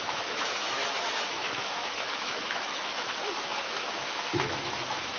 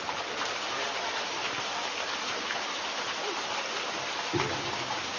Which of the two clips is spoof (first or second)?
first